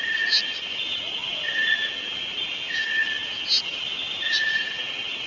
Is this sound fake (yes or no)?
no